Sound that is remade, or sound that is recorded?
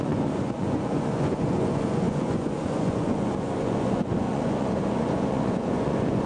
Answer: remade